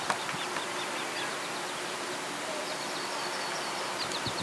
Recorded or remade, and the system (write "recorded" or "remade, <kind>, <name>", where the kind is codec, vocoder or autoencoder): recorded